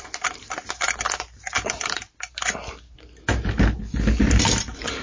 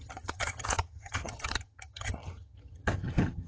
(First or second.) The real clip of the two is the first